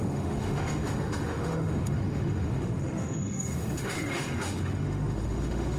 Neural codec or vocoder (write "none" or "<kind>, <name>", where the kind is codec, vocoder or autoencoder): autoencoder, DAC-VAE